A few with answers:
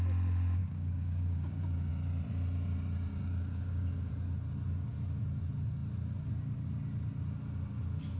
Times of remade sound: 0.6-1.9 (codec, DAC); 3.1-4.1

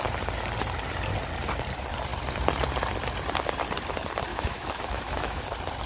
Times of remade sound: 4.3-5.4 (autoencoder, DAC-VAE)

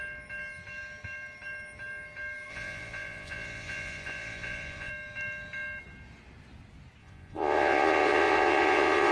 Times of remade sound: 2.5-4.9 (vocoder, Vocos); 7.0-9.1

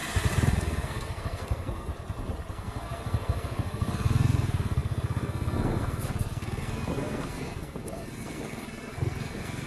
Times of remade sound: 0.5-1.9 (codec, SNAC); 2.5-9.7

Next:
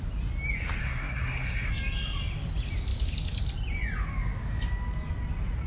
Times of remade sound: 0.8-1.7 (codec, SNAC)